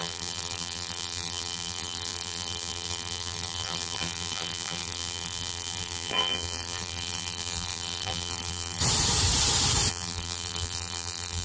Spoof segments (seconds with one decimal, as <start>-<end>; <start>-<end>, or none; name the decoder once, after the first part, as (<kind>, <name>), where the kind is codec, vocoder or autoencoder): 0.0-8.8 (vocoder, BigVGAN v2); 9.9-11.4